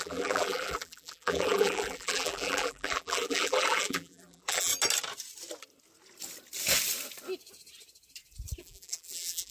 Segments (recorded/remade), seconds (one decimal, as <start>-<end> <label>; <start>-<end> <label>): 0.0-4.7 remade; 4.7-8.6 recorded; 8.6-9.5 remade